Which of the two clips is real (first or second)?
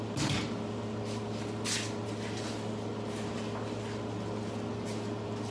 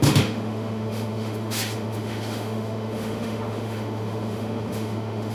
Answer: first